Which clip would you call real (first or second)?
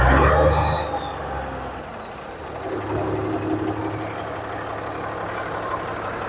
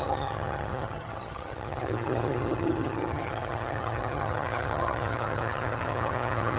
first